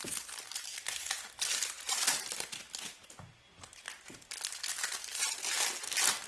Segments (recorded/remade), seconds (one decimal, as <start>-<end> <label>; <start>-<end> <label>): 0.0-6.3 recorded